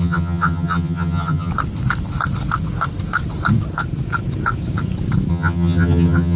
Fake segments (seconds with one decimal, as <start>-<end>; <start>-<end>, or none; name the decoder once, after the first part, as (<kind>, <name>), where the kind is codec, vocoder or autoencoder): 0.0-1.5 (vocoder, HiFi-GAN); 5.3-6.4